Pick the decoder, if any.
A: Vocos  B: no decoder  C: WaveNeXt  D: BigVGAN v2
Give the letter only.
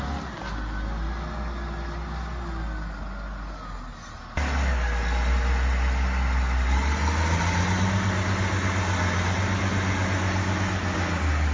B